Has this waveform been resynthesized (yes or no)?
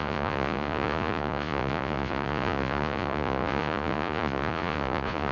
yes